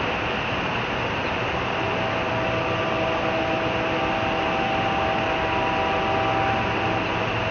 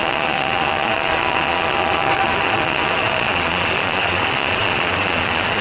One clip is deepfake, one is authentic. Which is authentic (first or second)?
first